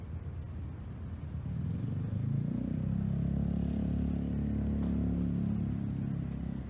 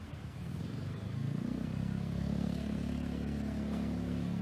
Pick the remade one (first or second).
second